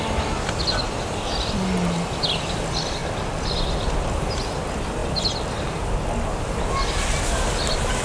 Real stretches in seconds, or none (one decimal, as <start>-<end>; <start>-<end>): 0.0-8.0